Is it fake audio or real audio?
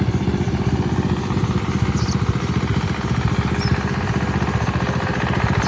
real